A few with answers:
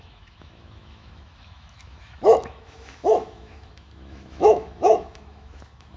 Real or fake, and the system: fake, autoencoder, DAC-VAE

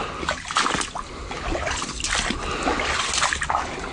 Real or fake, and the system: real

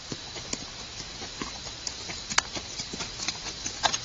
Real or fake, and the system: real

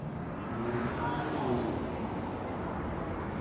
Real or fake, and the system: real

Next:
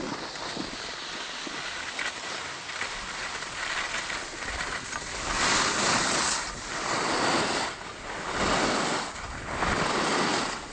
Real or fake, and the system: real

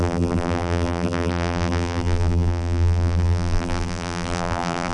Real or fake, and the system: fake, vocoder, BigVGAN v2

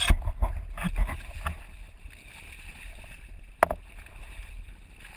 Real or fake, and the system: real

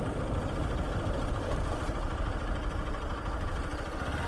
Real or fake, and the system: real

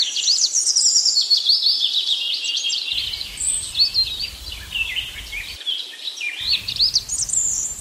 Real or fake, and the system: fake, vocoder, BigVGAN v2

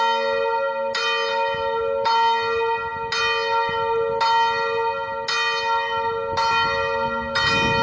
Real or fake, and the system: real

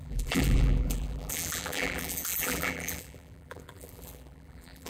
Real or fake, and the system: fake, vocoder, BigVGAN v2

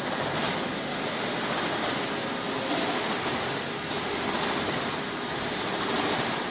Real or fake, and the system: real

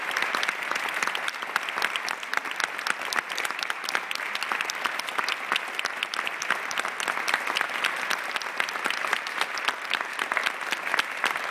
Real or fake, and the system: real